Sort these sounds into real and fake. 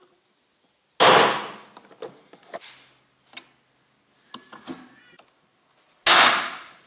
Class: real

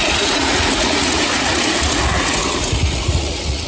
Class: fake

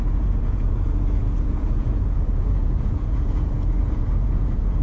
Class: fake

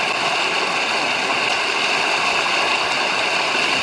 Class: real